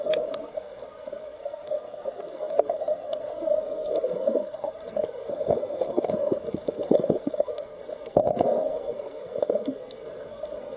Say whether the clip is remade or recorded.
remade